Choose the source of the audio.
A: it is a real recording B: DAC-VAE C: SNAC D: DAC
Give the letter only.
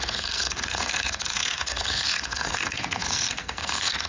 C